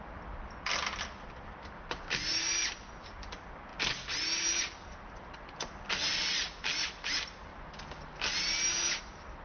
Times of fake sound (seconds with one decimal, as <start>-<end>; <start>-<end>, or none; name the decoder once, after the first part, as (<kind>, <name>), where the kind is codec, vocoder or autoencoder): none